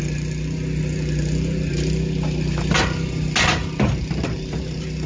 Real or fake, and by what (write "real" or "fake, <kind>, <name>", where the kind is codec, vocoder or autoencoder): real